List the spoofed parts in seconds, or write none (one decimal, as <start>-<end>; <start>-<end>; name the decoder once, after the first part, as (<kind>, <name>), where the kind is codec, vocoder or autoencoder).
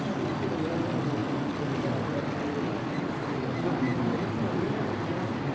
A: none